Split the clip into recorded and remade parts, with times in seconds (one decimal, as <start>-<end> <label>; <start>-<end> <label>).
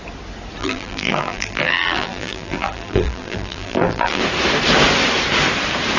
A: 0.0-0.6 recorded; 0.6-4.2 remade; 4.2-6.0 recorded